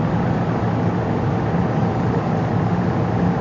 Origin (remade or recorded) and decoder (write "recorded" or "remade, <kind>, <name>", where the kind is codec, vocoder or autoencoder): recorded